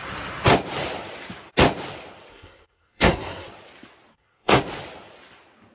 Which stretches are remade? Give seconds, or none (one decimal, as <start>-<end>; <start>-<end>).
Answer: 2.3-3.5; 4.1-4.6